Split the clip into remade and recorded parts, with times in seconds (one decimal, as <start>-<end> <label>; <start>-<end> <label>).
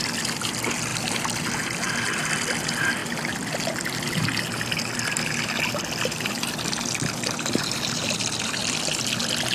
0.0-9.5 recorded